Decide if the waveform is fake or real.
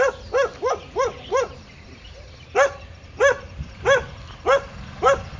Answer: real